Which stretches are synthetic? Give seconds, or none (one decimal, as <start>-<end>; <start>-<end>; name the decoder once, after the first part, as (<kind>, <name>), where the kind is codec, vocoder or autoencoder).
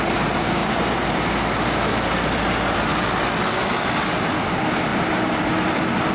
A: 0.6-1.3 (vocoder, BigVGAN v2); 4.9-5.5